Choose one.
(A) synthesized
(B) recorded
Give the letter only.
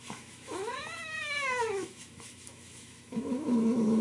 A